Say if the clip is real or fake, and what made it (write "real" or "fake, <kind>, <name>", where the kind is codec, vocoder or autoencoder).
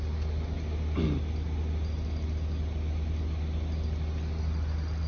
real